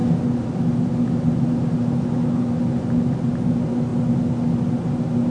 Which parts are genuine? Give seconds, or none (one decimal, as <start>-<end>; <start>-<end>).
0.0-5.3